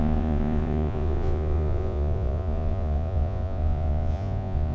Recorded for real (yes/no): no